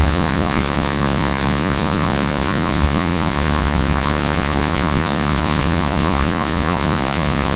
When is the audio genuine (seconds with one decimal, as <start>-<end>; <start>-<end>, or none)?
none